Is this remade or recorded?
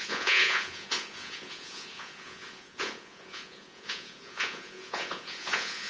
remade